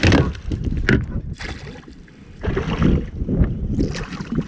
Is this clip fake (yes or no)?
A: no